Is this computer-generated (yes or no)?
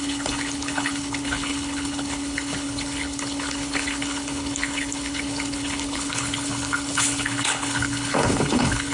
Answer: yes